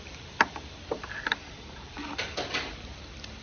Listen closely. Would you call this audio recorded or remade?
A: remade